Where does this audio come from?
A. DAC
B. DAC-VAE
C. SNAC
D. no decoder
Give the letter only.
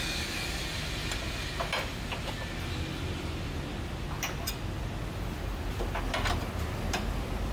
D